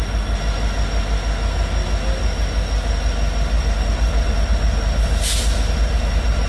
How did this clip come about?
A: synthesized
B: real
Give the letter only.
B